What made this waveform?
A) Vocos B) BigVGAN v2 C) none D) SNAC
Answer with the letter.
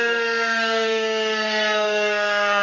D